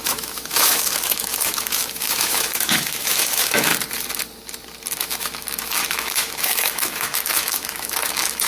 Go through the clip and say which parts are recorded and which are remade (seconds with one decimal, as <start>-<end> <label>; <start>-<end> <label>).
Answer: 0.0-3.7 remade; 3.7-5.0 recorded; 5.0-8.5 remade